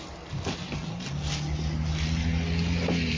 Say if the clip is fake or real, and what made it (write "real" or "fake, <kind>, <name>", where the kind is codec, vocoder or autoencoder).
real